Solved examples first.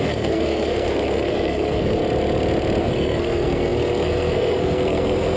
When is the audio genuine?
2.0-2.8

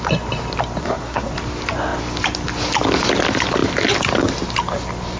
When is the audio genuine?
0.0-0.8; 1.3-5.2

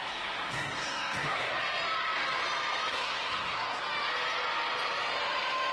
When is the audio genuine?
1.5-2.9; 3.8-5.7

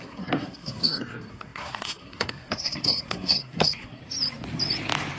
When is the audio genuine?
4.0-5.2

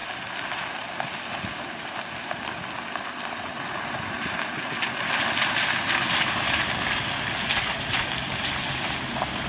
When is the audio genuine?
0.0-9.5

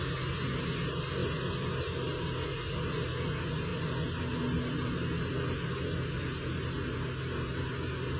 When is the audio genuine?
0.0-8.2

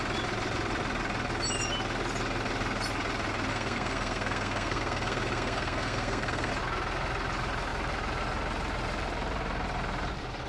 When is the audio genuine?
0.0-3.5; 6.5-10.5

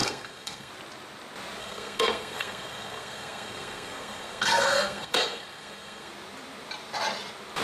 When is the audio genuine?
0.7-1.6; 6.1-7.6